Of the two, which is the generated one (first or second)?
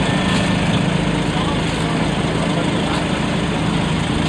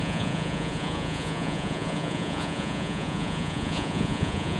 second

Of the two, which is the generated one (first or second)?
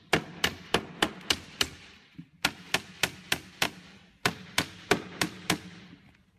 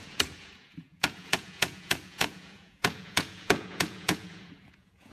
second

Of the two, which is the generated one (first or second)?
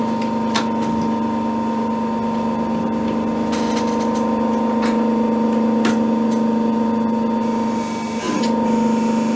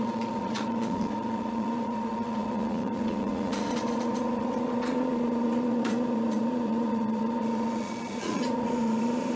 second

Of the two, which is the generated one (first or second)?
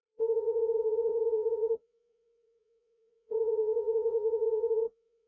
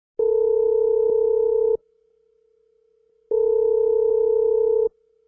first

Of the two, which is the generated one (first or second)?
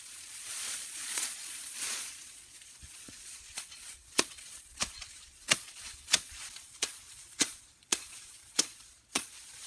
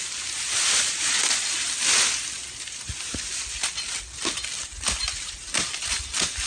first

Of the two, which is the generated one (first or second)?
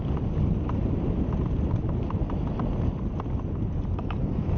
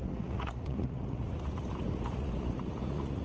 second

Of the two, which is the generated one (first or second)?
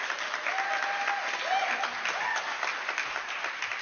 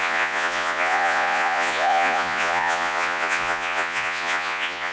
second